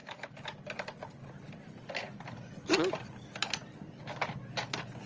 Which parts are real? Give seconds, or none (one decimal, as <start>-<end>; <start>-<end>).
0.0-5.1